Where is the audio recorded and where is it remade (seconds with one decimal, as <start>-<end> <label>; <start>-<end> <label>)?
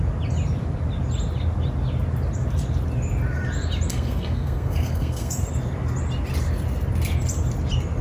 0.0-3.9 recorded; 3.9-5.4 remade; 5.4-8.0 recorded